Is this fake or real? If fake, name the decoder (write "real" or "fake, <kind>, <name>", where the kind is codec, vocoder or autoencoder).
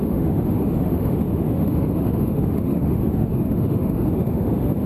fake, autoencoder, DAC-VAE